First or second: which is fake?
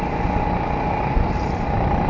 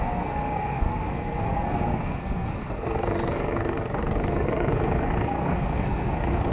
second